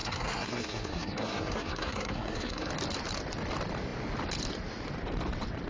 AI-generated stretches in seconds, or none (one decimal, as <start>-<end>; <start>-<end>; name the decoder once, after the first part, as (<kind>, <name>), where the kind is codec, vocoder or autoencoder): 0.0-2.7 (codec, SNAC)